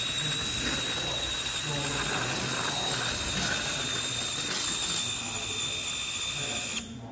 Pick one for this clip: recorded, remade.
recorded